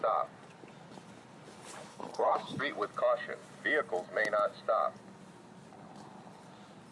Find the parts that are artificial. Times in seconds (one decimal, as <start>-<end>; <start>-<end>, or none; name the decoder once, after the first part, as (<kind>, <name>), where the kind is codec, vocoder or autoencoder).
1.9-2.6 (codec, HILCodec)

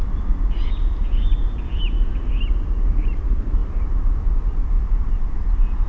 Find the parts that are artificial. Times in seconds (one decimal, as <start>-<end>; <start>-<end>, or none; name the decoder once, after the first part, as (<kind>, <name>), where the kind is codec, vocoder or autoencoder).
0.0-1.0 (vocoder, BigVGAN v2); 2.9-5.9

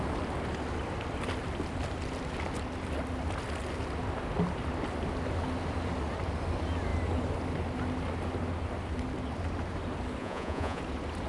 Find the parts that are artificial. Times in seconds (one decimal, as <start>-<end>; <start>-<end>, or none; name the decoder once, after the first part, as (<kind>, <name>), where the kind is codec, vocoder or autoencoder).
10.2-10.8 (vocoder, Vocos)

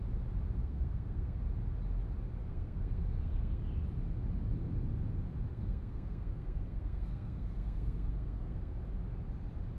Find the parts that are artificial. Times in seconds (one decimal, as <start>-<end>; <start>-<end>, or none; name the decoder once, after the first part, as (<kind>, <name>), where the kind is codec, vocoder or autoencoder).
0.6-1.4 (codec, SNAC); 2.4-3.6; 5.5-8.8